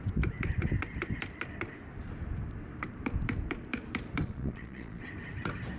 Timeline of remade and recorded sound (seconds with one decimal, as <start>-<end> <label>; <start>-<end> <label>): 0.0-4.2 recorded; 4.2-5.0 remade; 5.0-5.8 recorded